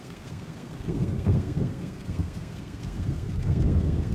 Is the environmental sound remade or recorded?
remade